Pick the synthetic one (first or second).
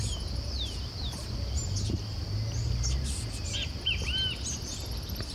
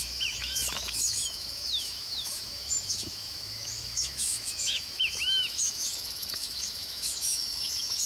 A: second